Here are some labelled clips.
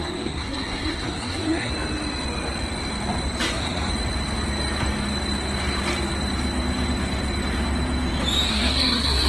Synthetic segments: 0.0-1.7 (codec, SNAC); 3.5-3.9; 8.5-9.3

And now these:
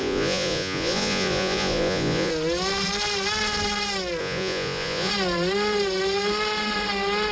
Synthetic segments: 0.0-2.3 (vocoder, Vocos); 4.2-5.1